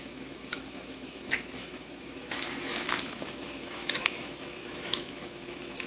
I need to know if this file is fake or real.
fake